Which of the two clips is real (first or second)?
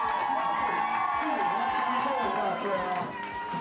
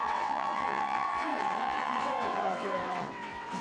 first